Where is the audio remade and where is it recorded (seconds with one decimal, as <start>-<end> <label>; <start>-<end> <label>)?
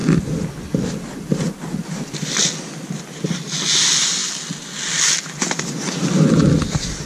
0.0-7.1 recorded